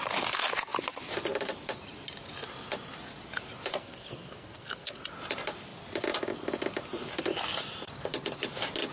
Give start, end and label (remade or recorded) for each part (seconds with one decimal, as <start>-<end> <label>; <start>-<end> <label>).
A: 0.0-3.7 recorded; 3.7-5.1 remade; 5.1-8.9 recorded